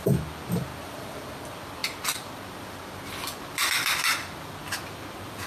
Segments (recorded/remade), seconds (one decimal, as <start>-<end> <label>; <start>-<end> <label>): 0.0-5.5 recorded